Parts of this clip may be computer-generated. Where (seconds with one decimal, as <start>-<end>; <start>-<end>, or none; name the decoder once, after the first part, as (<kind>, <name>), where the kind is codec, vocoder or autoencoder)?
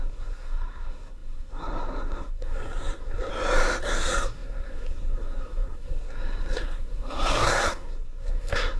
0.0-3.3 (codec, SNAC); 3.8-8.8